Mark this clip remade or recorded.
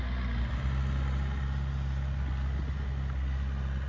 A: recorded